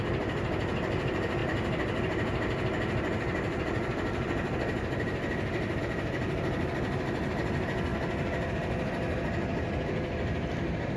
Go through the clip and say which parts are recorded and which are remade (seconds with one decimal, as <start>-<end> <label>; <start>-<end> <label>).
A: 0.0-11.0 recorded